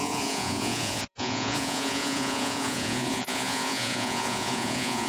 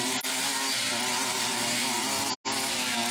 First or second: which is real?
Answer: second